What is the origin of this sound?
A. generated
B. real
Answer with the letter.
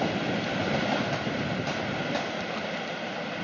B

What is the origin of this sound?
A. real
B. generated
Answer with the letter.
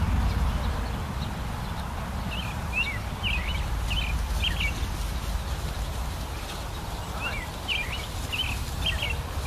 A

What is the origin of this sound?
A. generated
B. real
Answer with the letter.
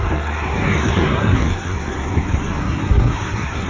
A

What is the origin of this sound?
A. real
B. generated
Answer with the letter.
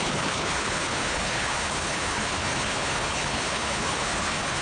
B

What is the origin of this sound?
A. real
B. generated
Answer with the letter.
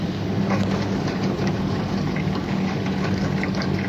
B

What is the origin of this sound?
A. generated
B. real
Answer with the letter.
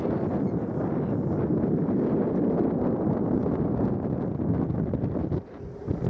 B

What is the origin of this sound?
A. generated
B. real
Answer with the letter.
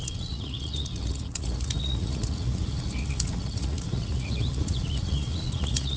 A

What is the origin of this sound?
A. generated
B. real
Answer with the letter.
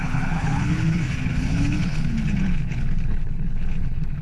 A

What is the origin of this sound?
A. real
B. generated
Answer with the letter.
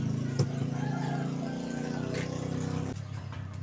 A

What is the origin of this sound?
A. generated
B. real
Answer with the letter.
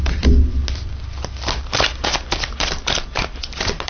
B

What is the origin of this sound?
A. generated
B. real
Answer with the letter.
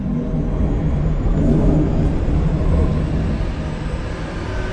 B